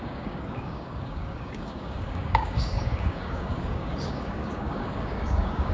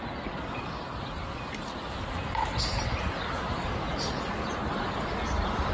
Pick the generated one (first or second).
first